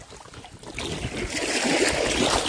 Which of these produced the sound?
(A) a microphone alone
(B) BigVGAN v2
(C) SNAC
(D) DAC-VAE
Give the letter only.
A